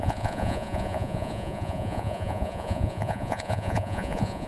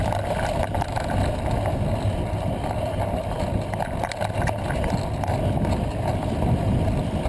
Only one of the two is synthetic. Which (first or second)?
first